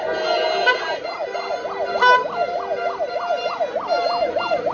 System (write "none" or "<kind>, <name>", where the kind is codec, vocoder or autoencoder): none